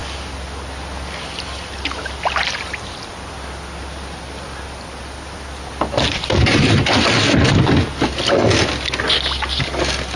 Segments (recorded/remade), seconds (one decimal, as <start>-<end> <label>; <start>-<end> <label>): 0.0-10.2 recorded